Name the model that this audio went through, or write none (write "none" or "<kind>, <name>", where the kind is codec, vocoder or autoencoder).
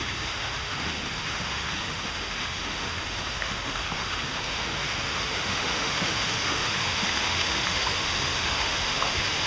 autoencoder, DAC-VAE